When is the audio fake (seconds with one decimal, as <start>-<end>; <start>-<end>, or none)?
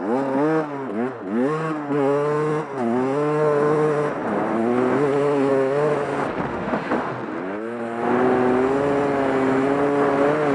6.5-7.1